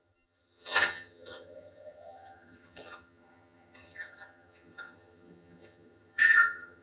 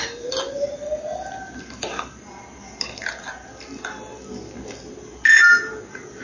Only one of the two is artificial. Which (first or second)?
first